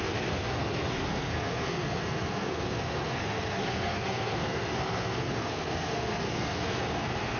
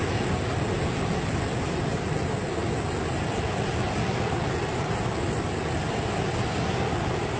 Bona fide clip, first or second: second